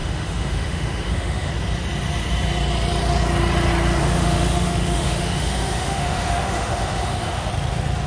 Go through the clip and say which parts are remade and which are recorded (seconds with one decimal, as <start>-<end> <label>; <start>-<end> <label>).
0.0-1.5 remade; 1.5-4.0 recorded; 4.0-7.5 remade; 7.5-8.1 recorded